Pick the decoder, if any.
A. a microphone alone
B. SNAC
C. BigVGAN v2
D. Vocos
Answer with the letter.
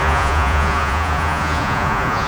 D